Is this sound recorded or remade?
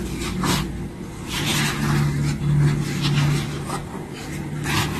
recorded